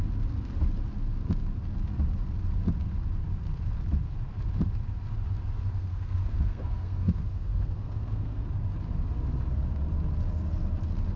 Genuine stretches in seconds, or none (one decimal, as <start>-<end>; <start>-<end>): 0.0-5.8; 8.5-11.2